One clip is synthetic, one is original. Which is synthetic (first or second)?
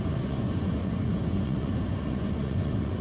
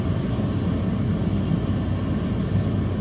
first